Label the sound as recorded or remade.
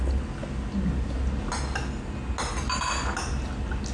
recorded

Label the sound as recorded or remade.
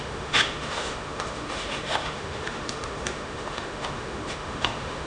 remade